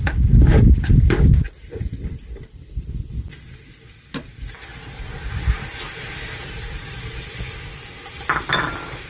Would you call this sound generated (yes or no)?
no